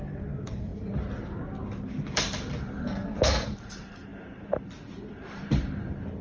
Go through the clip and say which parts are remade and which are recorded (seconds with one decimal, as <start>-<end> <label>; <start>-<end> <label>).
0.0-2.8 recorded; 2.8-3.5 remade; 3.5-6.2 recorded